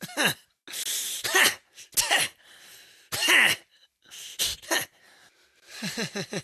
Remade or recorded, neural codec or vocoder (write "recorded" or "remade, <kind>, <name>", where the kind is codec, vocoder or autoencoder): recorded